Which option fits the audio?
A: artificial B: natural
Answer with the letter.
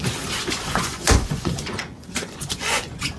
A